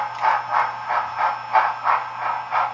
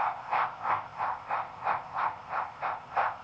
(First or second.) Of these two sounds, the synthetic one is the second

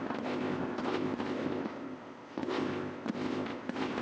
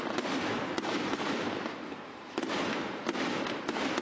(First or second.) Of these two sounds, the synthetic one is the first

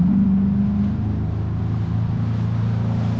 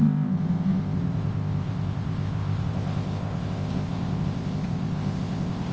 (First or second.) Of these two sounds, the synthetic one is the second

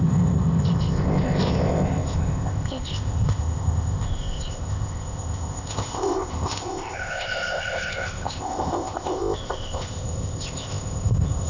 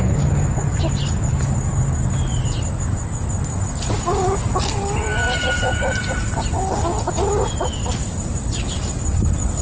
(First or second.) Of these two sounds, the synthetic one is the first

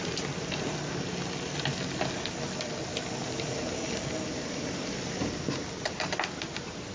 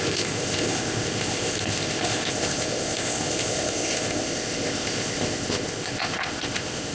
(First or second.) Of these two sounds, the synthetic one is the second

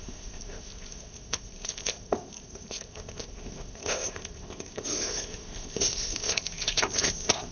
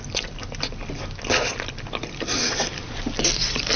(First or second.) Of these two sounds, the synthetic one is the first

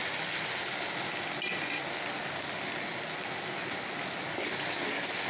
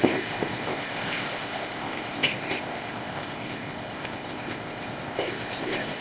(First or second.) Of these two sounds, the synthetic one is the second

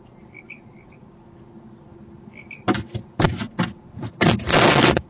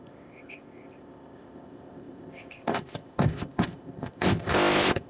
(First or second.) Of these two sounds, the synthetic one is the second